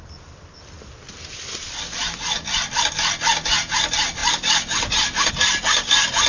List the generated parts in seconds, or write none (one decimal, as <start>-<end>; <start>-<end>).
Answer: 2.0-2.7; 4.2-5.3